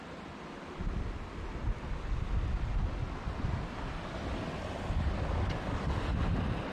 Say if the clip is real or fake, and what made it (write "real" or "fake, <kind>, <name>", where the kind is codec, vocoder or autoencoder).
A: real